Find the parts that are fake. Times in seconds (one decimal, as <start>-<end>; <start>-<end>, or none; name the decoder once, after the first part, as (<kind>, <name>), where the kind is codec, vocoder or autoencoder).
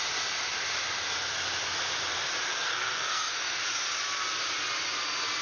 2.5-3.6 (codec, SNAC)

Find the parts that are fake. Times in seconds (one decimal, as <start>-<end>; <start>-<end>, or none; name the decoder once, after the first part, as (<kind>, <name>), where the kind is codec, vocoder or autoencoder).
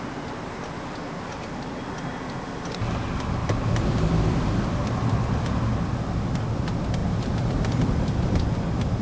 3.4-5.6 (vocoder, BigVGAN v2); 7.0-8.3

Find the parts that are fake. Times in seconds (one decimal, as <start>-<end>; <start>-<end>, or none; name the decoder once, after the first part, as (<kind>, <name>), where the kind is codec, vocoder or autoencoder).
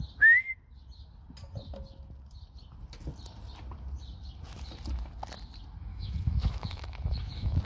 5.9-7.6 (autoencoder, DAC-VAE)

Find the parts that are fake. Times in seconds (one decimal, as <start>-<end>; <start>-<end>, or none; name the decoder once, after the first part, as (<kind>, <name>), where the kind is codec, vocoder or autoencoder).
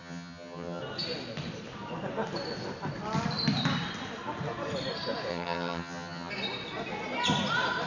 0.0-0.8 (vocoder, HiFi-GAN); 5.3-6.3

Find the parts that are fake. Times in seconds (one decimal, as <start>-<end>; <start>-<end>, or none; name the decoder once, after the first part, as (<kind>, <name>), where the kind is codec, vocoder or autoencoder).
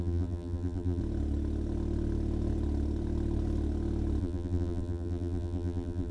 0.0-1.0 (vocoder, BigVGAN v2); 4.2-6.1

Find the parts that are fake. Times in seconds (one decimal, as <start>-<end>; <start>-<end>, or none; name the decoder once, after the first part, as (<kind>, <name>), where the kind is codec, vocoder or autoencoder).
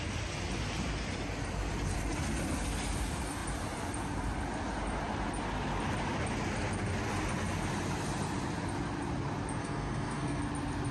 9.6-10.4 (codec, SNAC)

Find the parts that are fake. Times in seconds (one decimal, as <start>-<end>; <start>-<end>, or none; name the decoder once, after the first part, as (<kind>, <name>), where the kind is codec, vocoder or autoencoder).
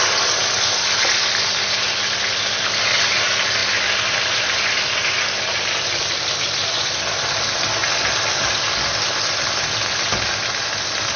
none